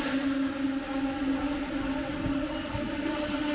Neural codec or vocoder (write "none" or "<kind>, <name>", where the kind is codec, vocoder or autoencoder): none